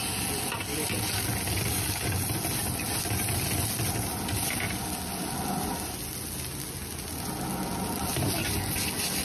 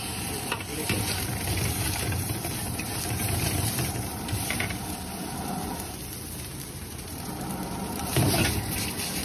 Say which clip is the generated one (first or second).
second